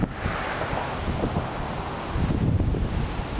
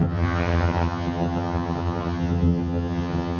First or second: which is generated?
second